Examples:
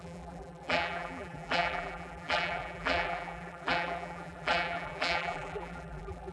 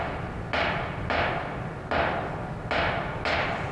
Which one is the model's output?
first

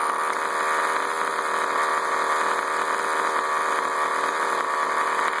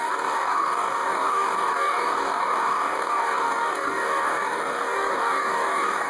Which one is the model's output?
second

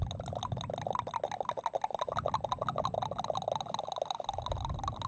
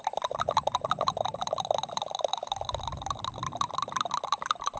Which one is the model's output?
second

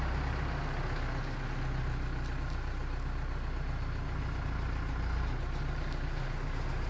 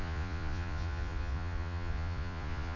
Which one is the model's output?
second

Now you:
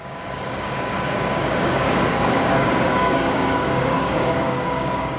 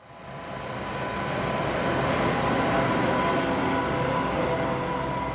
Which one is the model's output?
first